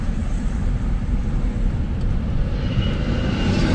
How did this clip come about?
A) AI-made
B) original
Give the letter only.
B